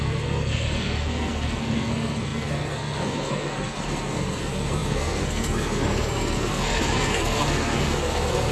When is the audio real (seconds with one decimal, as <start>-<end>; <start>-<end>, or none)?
none